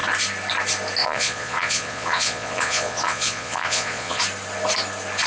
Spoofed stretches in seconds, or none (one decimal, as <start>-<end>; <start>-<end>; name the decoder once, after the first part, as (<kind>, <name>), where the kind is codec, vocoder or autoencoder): 1.0-4.2 (vocoder, Vocos)